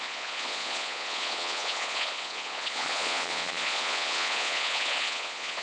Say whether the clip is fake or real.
fake